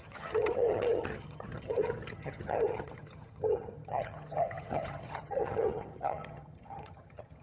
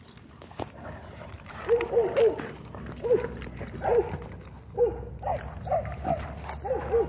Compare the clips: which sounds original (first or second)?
second